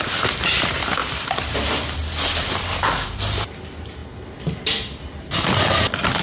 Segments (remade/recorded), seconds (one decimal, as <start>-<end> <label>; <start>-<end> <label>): 0.0-2.0 remade; 2.0-2.6 recorded; 2.6-6.2 remade